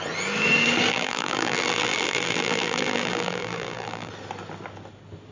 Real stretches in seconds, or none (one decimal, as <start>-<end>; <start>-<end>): 0.0-0.9; 4.1-5.3